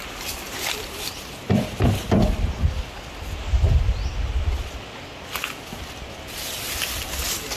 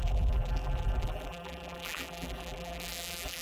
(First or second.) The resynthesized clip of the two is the second